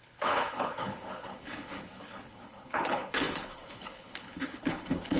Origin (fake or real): fake